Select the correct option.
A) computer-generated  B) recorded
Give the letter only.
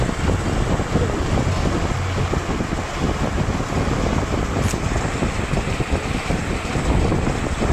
B